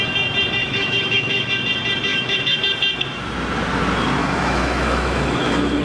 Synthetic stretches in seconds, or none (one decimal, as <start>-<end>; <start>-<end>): 0.6-1.5; 2.1-2.6; 4.2-5.8